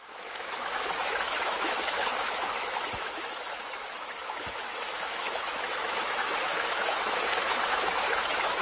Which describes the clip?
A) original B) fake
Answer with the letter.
B